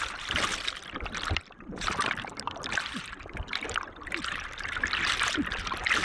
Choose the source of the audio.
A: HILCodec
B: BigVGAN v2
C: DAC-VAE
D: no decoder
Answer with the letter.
B